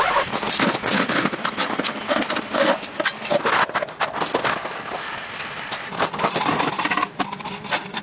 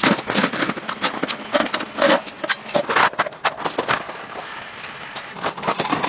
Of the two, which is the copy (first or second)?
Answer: first